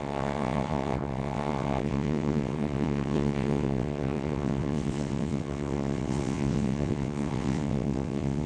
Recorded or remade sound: remade